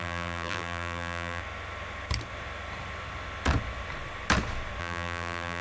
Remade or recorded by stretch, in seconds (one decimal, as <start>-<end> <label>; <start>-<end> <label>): 0.0-1.4 remade; 1.4-4.8 recorded; 4.8-5.6 remade